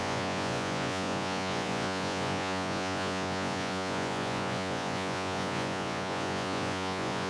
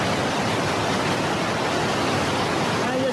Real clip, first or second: second